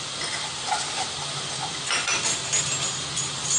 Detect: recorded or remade recorded